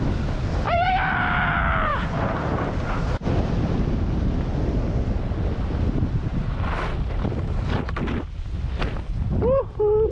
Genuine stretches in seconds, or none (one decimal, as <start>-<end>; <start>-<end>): 0.0-1.9; 3.5-10.1